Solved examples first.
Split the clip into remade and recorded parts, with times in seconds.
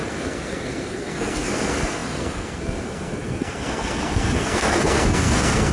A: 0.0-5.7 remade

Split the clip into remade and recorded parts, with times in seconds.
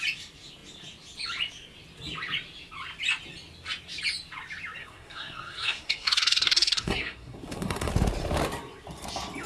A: 0.0-4.8 recorded; 4.8-7.9 remade; 7.9-9.5 recorded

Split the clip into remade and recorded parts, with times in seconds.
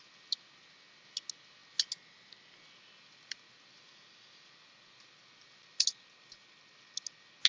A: 0.0-7.5 recorded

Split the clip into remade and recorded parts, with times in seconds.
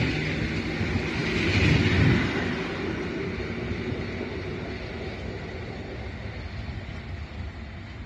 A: 0.0-8.1 recorded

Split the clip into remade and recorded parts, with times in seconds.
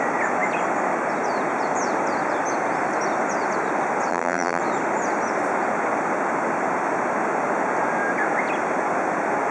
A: 0.0-4.1 recorded; 4.1-4.6 remade; 4.6-9.5 recorded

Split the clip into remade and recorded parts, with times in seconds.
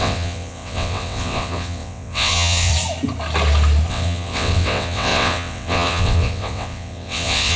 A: 0.0-2.7 remade; 2.7-3.9 recorded; 3.9-7.6 remade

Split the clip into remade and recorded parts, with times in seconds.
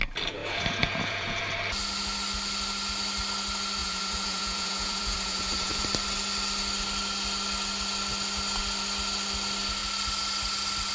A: 0.0-0.4 recorded; 0.4-1.4 remade; 1.4-3.8 recorded; 3.8-5.8 remade; 5.8-10.9 recorded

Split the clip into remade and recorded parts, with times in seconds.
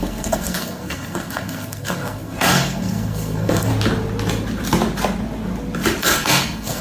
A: 0.0-3.7 remade; 3.7-6.0 recorded; 6.0-6.8 remade